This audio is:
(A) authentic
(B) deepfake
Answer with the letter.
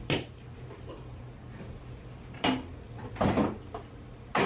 A